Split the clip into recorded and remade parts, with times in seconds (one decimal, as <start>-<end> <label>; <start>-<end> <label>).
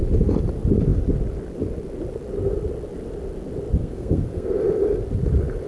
0.0-3.8 recorded; 3.8-4.6 remade; 4.6-5.7 recorded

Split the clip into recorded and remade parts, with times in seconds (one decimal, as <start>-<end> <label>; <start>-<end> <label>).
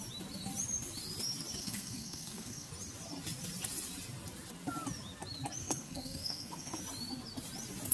0.0-1.6 recorded; 1.6-2.7 remade; 2.7-5.6 recorded; 5.6-6.8 remade; 6.8-7.9 recorded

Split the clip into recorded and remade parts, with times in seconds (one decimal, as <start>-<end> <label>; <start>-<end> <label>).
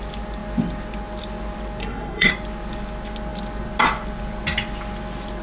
0.0-1.8 recorded; 1.8-2.3 remade; 2.3-5.4 recorded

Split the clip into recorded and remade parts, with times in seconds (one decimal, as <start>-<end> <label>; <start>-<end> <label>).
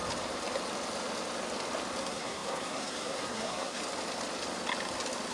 0.0-2.0 recorded; 2.0-3.8 remade; 3.8-5.3 recorded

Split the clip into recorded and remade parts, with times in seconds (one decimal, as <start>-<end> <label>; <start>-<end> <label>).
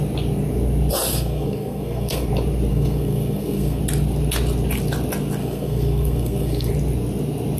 0.0-1.1 recorded; 1.1-2.3 remade; 2.3-2.7 recorded; 2.7-3.8 remade; 3.8-5.4 recorded; 5.4-6.7 remade; 6.7-7.6 recorded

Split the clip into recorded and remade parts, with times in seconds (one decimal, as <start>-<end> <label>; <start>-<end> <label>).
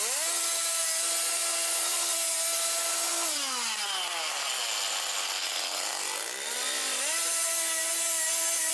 0.0-8.7 recorded